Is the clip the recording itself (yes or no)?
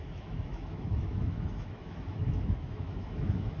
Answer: no